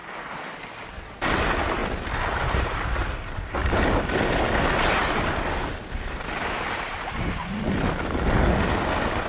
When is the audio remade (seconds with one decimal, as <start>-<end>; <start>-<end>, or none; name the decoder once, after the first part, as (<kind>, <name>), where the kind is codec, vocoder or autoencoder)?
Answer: none